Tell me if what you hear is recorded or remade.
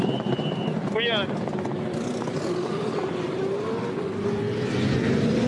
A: recorded